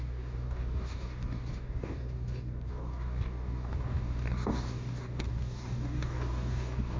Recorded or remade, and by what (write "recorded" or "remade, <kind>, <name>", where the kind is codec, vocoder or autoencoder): remade, codec, DAC